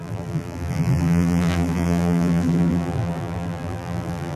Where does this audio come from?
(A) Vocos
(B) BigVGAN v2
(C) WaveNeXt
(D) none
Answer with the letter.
B